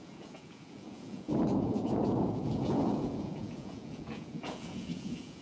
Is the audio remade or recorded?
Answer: remade